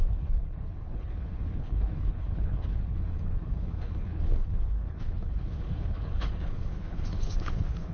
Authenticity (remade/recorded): remade